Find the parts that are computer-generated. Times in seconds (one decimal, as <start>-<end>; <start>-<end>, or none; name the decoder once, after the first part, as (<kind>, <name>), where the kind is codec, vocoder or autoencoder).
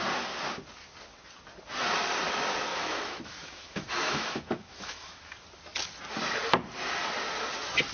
2.7-5.3 (autoencoder, DAC-VAE)